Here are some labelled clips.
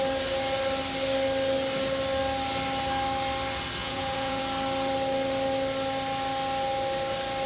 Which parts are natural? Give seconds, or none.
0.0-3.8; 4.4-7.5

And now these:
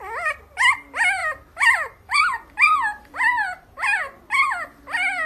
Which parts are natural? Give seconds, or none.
0.0-1.2; 4.0-5.3